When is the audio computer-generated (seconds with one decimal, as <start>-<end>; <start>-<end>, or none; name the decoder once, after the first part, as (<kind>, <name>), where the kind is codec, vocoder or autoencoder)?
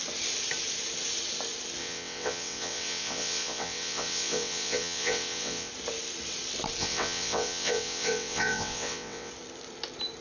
1.8-5.7 (vocoder, WaveNeXt); 6.8-9.3